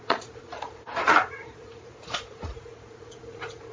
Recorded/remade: remade